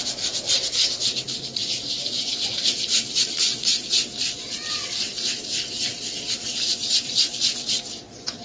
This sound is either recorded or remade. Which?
recorded